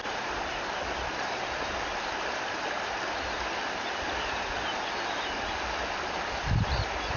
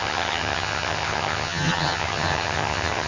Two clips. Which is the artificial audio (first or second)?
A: second